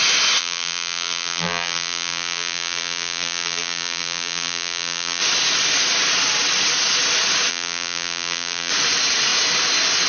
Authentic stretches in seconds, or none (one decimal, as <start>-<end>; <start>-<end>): 0.0-0.4; 5.2-7.5; 8.7-10.1